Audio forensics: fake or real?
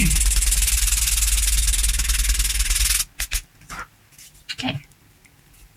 real